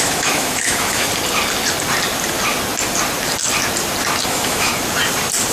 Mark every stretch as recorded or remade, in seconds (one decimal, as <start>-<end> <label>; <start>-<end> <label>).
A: 0.0-1.1 remade; 1.1-4.3 recorded; 4.3-4.7 remade; 4.7-5.5 recorded